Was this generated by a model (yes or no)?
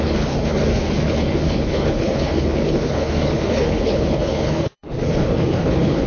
yes